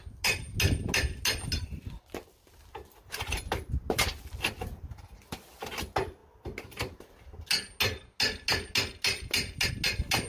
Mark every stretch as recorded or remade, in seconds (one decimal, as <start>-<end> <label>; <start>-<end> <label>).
0.0-10.3 recorded